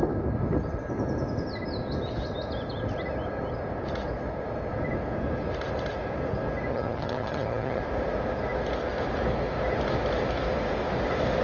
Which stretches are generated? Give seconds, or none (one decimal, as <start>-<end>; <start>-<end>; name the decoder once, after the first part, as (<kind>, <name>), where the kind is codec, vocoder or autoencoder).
6.7-7.8 (vocoder, HiFi-GAN)

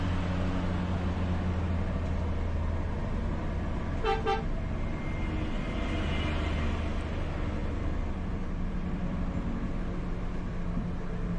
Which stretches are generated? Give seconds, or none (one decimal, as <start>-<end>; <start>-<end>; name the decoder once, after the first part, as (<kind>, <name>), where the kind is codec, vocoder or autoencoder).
7.6-9.2 (vocoder, BigVGAN v2)

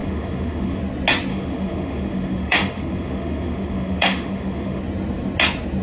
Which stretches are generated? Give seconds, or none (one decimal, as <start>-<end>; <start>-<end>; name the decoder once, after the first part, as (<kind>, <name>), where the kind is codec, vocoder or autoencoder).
0.0-0.8 (autoencoder, DAC-VAE); 1.3-4.8